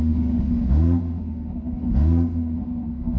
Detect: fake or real fake